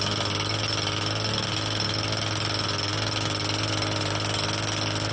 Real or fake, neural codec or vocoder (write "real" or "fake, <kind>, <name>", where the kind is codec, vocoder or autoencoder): real